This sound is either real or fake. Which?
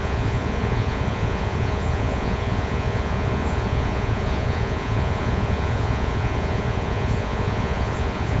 fake